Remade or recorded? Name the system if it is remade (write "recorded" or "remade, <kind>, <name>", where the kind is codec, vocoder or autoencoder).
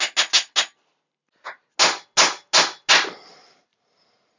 recorded